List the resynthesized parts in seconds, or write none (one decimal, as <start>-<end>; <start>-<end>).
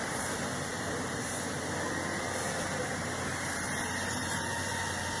4.2-4.8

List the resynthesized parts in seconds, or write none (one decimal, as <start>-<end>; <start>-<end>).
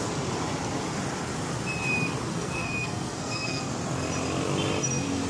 2.3-3.7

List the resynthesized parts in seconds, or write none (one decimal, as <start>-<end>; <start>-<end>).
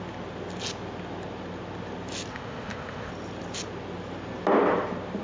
2.3-3.1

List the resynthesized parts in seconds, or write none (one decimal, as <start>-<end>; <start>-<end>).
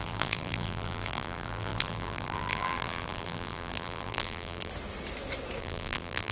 0.0-4.7; 5.6-6.3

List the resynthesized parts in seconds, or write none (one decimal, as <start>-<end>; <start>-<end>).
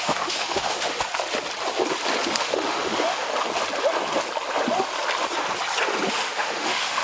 0.0-1.1; 2.4-3.3; 6.1-7.0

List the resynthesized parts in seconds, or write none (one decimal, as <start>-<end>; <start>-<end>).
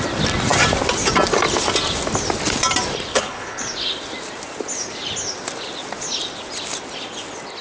3.1-3.6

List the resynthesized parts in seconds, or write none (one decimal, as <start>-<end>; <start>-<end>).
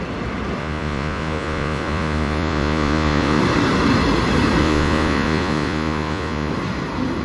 0.6-3.4; 4.6-6.5